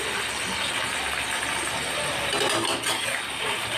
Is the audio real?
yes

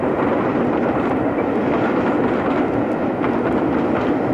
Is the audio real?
yes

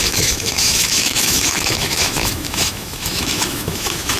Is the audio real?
no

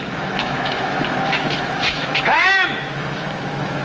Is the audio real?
no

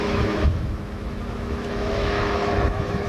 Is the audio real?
no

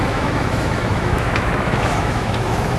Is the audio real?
no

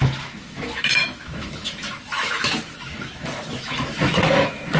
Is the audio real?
no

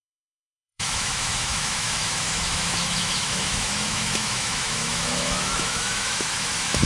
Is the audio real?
no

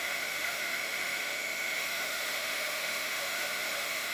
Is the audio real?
no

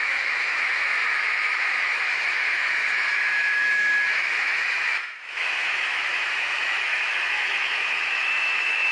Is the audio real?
no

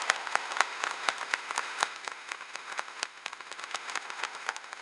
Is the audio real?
no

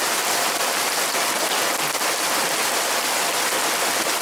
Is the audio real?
yes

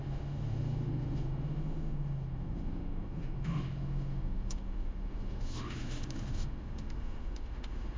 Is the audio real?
no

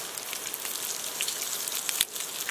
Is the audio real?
yes